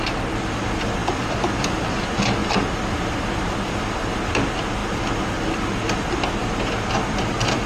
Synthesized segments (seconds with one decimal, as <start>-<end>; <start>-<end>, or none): 0.0-2.4; 2.9-7.7